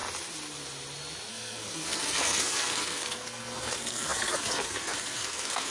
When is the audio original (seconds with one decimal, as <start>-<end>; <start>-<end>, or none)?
0.0-1.3

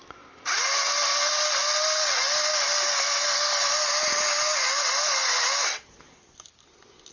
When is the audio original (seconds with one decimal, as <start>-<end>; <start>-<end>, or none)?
0.0-7.1

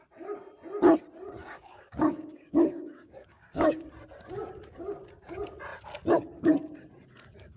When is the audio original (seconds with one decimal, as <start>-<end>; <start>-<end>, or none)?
0.0-1.4; 3.8-7.6

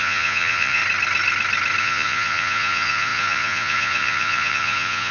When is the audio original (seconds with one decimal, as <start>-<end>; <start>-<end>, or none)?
0.8-1.8